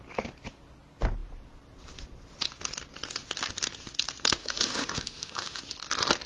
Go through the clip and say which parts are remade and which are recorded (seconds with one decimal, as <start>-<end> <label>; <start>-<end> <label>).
0.0-4.4 recorded; 4.4-5.6 remade; 5.6-6.3 recorded